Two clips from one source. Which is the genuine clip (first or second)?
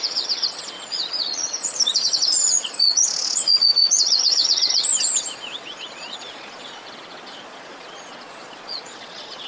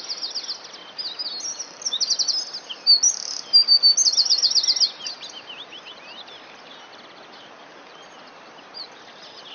second